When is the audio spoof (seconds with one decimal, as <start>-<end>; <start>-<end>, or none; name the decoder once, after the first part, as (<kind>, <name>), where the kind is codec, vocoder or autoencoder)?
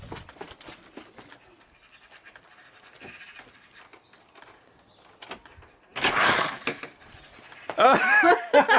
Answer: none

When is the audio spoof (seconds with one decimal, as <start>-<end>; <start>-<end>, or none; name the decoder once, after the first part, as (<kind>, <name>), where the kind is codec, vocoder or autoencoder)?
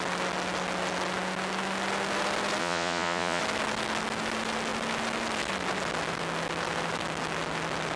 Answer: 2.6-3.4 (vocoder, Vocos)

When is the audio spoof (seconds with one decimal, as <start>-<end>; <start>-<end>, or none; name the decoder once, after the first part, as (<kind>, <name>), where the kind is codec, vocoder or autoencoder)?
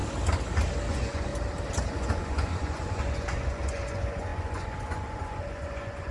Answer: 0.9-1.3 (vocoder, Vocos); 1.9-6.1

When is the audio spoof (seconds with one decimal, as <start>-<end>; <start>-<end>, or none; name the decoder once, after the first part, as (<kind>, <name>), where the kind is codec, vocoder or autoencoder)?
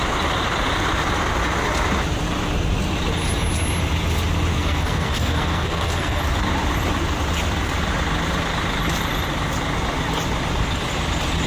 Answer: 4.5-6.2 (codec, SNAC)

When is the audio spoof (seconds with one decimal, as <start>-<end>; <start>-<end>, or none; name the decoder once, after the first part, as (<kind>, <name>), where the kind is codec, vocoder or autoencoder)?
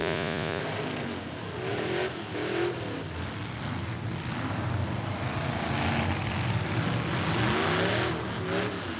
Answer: 0.0-0.6 (vocoder, Vocos)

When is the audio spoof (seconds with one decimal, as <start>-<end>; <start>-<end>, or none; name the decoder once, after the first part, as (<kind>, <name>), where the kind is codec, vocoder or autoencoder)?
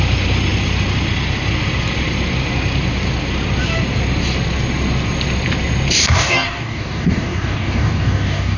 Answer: 6.0-8.6 (codec, DAC)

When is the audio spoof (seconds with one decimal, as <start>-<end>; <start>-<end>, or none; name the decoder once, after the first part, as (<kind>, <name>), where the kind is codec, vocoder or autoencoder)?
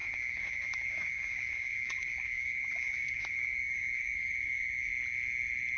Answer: 0.0-4.9 (codec, DAC)